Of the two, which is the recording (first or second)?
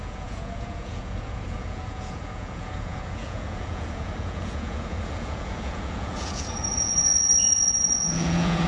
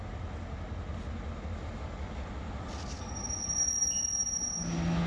second